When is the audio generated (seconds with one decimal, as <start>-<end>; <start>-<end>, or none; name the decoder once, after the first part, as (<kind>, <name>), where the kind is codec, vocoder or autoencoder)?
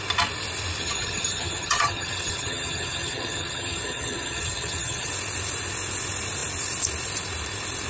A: 0.8-5.1 (vocoder, HiFi-GAN)